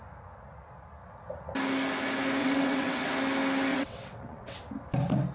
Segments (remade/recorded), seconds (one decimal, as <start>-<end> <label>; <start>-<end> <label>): 0.0-2.4 recorded; 2.4-3.1 remade; 3.1-3.7 recorded; 3.7-4.6 remade; 4.6-5.3 recorded